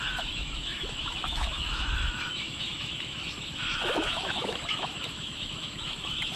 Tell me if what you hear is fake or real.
fake